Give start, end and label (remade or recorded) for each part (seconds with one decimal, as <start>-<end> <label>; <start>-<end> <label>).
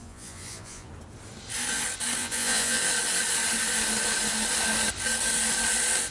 0.0-0.9 remade; 0.9-2.2 recorded; 2.2-2.8 remade; 2.8-6.1 recorded